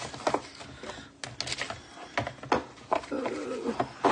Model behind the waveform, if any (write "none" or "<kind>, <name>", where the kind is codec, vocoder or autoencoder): none